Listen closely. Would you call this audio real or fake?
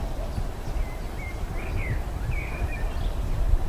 real